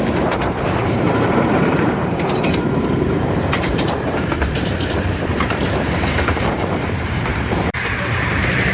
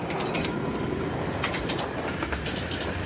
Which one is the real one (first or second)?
second